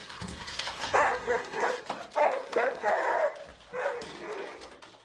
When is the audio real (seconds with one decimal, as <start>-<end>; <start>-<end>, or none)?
1.8-2.2; 2.9-5.0